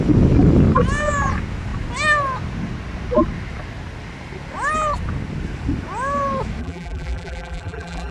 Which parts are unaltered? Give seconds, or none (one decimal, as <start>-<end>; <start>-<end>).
0.0-6.6